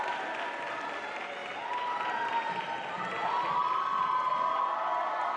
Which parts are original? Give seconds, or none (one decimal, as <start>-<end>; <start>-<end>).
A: 0.0-5.4